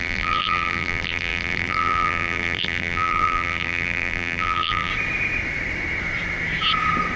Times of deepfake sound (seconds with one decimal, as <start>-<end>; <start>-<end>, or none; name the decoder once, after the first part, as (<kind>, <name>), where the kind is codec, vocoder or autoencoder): 0.0-4.9 (vocoder, BigVGAN v2)